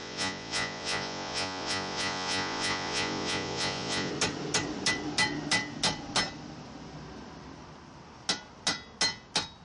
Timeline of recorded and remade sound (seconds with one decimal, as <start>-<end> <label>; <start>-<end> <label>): 0.0-4.1 remade; 4.1-9.6 recorded